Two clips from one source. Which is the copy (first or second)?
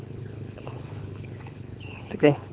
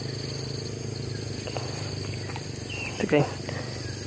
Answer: first